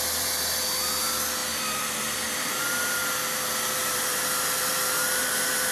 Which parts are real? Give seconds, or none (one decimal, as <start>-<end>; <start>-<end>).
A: 0.0-1.4; 2.5-3.8; 4.8-5.7